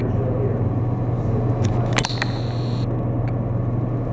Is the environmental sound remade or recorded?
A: recorded